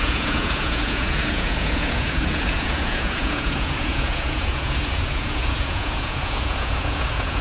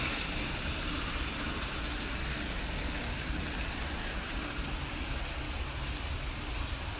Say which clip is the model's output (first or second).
first